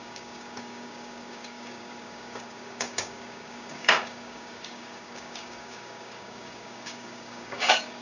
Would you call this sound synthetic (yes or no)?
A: yes